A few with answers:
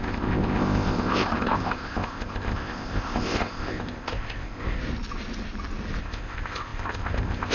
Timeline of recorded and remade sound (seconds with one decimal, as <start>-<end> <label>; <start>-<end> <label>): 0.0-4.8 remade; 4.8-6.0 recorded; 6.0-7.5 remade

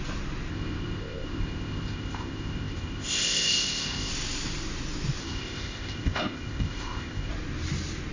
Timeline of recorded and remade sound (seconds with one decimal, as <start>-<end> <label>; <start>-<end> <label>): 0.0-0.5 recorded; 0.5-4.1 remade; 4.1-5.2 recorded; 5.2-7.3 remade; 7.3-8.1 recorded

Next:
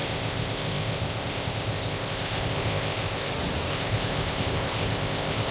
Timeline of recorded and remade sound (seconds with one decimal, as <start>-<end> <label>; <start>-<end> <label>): 0.0-3.3 remade; 3.3-3.7 recorded; 3.7-5.5 remade